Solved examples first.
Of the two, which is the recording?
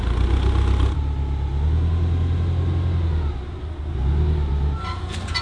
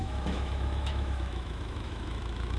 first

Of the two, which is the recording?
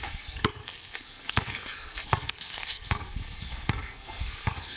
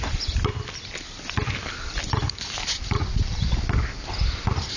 second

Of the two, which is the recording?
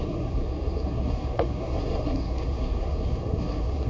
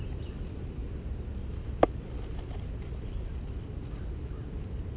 second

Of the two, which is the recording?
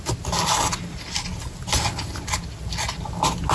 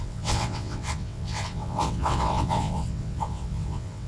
first